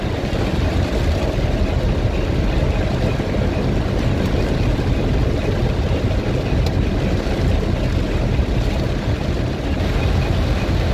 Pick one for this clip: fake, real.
real